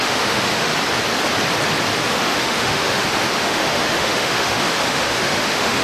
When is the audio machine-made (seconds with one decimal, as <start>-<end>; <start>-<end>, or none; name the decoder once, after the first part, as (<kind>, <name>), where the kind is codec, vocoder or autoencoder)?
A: 0.0-0.7 (autoencoder, DAC-VAE); 2.0-5.8